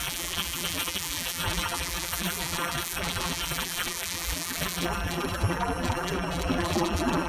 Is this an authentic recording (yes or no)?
no